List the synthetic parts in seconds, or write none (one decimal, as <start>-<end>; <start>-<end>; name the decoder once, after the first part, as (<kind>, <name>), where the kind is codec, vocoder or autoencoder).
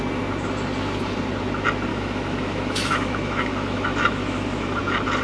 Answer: 1.9-4.8 (autoencoder, DAC-VAE)